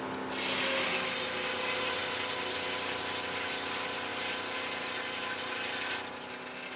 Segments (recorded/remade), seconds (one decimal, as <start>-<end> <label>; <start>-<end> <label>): 0.0-4.1 recorded; 4.1-4.8 remade; 4.8-6.8 recorded